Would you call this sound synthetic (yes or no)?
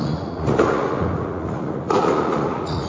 yes